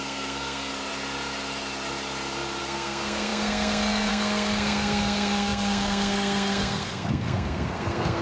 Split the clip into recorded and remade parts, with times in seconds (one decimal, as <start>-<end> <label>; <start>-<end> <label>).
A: 0.0-0.7 remade; 0.7-2.6 recorded; 2.6-8.2 remade